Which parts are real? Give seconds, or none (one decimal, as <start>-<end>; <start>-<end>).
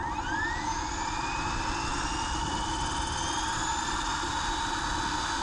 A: 0.0-0.7; 1.3-5.4